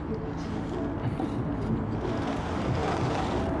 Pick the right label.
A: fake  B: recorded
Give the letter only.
B